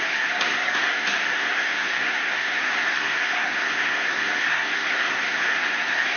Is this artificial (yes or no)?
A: yes